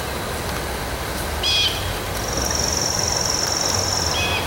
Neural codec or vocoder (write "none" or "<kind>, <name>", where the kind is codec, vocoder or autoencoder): none